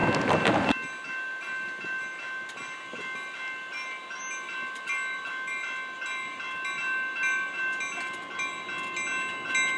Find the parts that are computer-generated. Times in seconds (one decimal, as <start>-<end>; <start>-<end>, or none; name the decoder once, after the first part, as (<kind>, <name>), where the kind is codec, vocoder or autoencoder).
none